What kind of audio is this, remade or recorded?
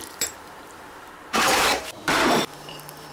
remade